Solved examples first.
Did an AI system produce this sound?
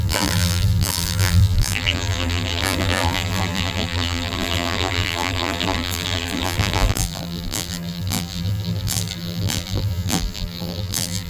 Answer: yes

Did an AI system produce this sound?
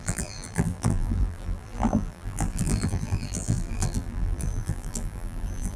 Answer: yes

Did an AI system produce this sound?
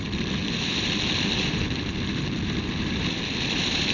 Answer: yes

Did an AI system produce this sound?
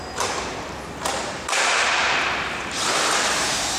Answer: yes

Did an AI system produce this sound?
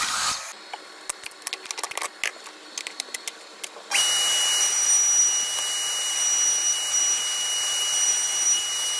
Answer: no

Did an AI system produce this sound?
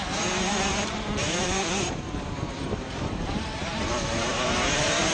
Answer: yes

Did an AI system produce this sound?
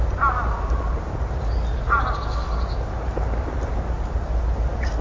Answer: no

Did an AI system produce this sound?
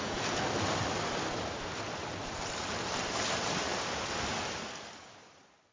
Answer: yes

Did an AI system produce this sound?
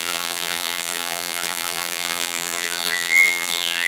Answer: yes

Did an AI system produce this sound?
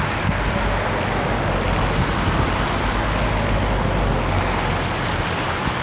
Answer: no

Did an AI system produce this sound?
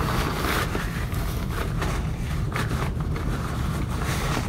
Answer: yes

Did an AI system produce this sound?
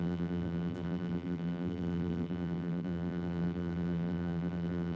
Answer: yes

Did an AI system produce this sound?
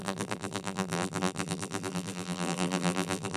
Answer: yes